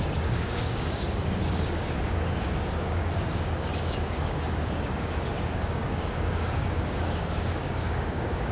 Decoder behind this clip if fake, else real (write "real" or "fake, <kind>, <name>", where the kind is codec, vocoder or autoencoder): fake, codec, DAC